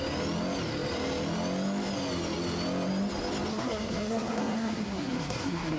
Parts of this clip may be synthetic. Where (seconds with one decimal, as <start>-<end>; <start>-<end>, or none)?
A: 3.5-5.8

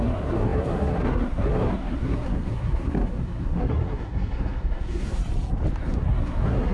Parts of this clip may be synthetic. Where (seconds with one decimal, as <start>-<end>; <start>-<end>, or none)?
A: 0.0-5.2; 5.8-6.7

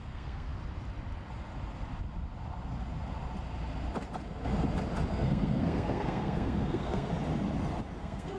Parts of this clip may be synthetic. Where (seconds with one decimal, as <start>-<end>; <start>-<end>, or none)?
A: 0.0-0.5; 5.1-7.1; 8.0-8.4